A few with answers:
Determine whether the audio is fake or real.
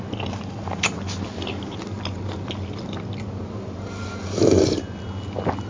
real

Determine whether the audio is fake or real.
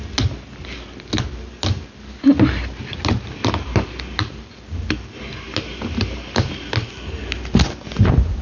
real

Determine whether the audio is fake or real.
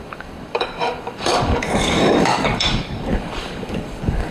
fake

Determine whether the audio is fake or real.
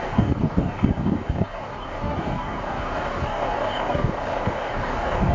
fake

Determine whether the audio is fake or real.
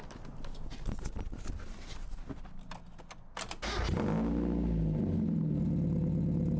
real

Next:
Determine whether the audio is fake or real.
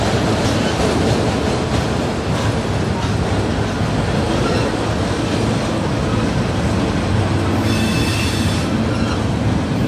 real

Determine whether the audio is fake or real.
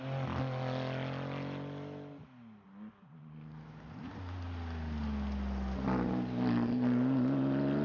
real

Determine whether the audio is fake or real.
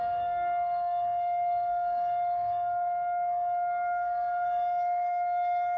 fake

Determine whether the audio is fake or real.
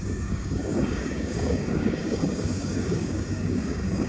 fake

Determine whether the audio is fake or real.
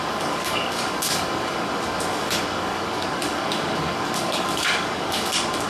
fake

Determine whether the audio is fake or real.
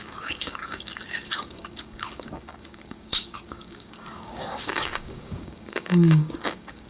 fake